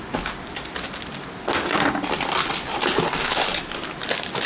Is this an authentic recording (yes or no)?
yes